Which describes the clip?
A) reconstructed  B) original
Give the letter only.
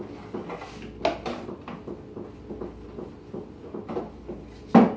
B